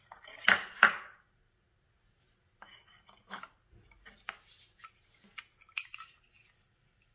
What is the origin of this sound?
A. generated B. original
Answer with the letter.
B